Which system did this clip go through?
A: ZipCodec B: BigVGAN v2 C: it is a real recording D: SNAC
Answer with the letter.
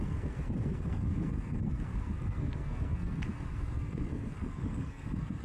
D